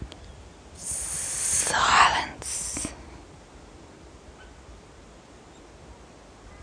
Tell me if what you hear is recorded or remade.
recorded